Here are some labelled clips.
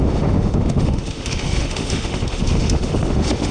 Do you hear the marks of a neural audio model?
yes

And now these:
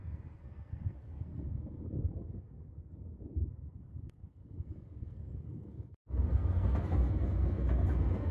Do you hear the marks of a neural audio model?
yes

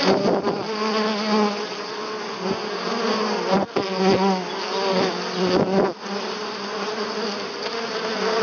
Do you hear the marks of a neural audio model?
no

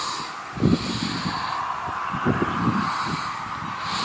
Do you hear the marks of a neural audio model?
yes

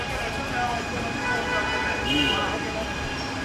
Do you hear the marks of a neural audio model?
no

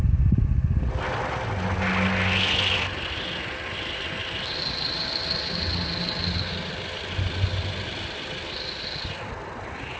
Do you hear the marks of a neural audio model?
no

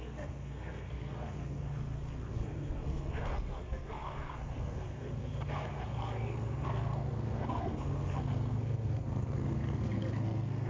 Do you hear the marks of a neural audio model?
yes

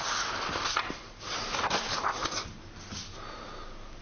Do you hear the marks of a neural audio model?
no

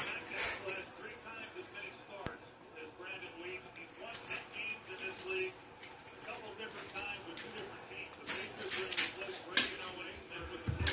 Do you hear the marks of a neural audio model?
no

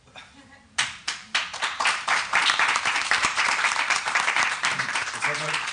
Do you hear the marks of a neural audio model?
yes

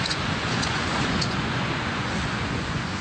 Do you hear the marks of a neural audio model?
yes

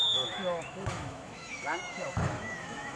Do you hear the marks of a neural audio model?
yes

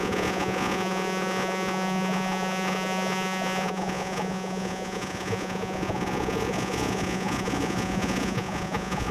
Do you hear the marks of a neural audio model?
yes